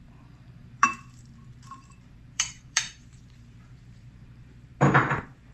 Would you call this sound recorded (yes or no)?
no